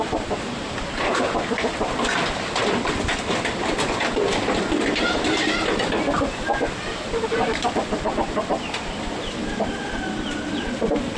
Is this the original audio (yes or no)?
no